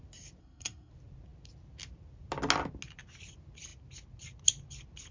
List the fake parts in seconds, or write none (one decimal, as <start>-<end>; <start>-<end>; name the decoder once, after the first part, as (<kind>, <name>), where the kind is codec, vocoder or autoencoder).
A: 0.4-0.9 (codec, SNAC)